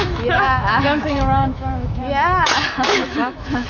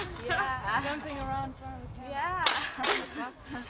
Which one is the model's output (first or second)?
first